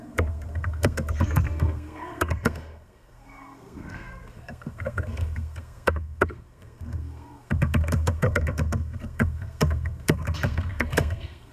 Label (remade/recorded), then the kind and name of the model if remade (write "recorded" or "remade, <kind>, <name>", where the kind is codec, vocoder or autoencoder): remade, codec, SNAC